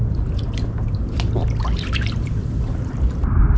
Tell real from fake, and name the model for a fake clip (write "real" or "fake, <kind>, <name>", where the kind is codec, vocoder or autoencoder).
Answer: fake, vocoder, BigVGAN v2